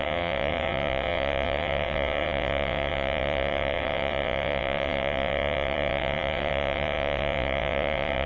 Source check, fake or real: fake